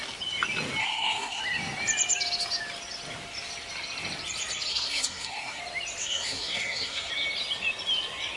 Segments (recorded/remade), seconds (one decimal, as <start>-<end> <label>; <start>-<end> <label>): 0.0-0.8 recorded; 0.8-1.4 remade; 1.4-4.7 recorded; 4.7-5.6 remade; 5.6-6.0 recorded; 6.0-7.1 remade; 7.1-8.4 recorded

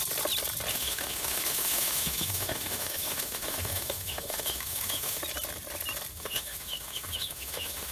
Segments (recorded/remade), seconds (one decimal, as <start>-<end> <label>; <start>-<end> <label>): 0.0-0.7 recorded; 0.7-5.2 remade; 5.2-6.1 recorded; 6.1-7.9 remade

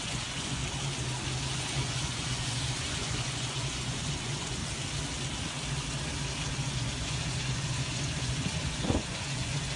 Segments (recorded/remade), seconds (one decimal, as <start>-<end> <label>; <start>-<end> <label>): 0.0-0.6 remade; 0.6-1.5 recorded; 1.5-4.6 remade; 4.6-6.5 recorded; 6.5-9.8 remade

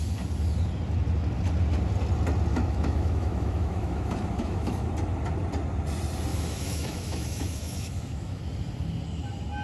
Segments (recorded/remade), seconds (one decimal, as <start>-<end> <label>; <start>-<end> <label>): 0.0-2.5 recorded; 2.5-4.9 remade; 4.9-6.3 recorded; 6.3-8.4 remade; 8.4-9.6 recorded